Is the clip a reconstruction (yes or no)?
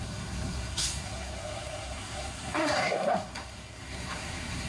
yes